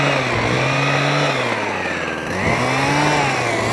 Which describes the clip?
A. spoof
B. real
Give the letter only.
B